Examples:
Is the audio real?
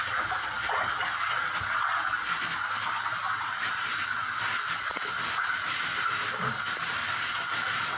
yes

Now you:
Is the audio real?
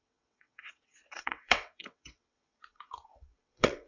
no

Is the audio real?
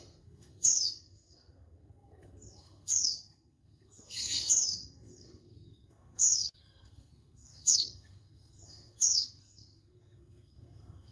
no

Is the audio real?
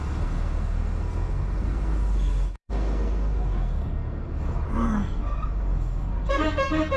no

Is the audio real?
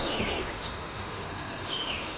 no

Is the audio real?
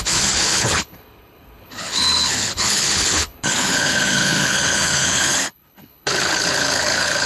no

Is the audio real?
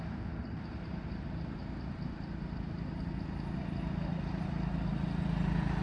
yes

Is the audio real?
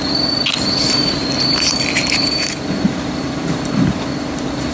yes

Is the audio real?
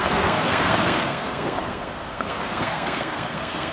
no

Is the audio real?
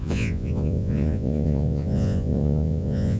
no